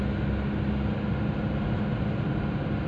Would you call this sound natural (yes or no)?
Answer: yes